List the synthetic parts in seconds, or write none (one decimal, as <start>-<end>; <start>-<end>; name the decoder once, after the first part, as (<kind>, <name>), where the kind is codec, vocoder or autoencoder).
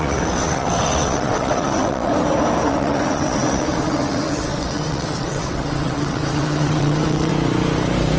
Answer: 0.0-2.1 (vocoder, WaveNeXt); 2.7-7.3